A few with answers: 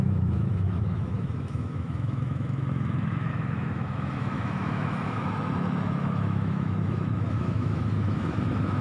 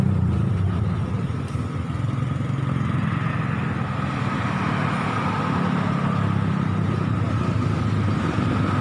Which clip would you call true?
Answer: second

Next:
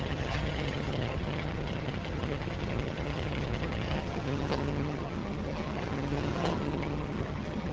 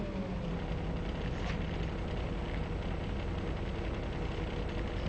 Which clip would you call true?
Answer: second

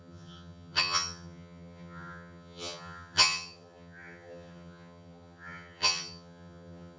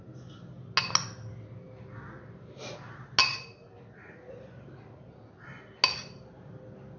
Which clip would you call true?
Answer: second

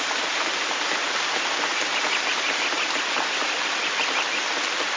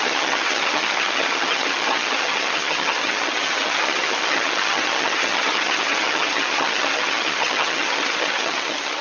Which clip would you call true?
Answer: first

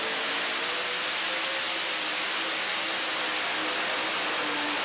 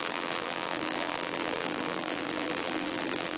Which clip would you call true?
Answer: first